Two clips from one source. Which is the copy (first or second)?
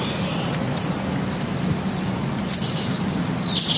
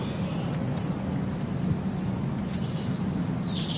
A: first